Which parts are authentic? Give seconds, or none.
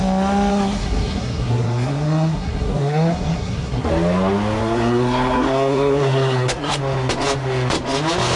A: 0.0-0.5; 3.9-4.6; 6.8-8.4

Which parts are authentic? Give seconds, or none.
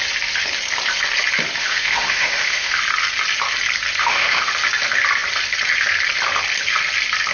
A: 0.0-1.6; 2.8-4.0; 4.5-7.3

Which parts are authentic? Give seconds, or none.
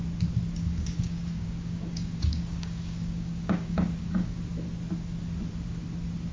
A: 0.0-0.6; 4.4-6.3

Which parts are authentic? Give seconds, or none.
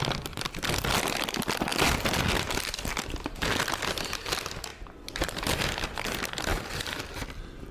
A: 0.0-7.7